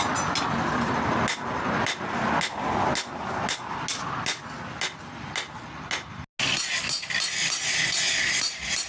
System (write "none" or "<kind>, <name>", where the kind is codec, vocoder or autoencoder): none